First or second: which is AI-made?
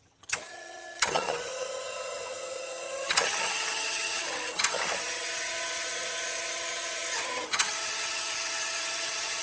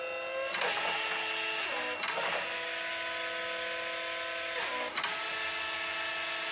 first